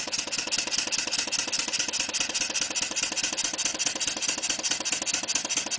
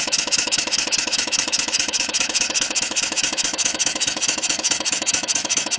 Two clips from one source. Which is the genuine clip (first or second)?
first